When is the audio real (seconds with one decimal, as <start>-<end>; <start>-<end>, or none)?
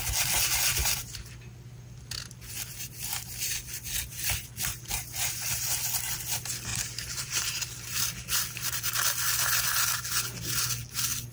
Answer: 0.0-0.8; 1.3-4.7; 5.8-6.7; 8.1-11.3